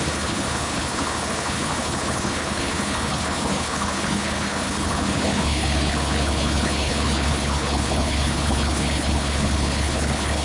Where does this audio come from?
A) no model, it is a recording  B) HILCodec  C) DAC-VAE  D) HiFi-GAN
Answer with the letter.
B